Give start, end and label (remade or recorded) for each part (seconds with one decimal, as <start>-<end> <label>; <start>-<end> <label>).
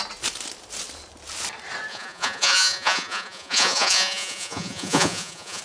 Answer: 0.0-1.9 recorded; 1.9-5.6 remade